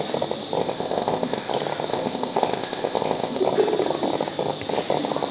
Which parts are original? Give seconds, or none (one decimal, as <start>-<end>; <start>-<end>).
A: 0.0-0.6; 1.5-1.9; 3.4-5.3